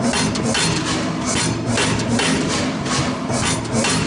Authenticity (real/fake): real